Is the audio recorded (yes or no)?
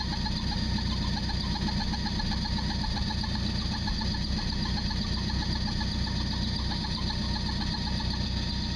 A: yes